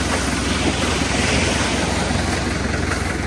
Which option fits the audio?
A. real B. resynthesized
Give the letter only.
A